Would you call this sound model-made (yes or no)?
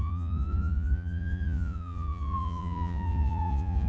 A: yes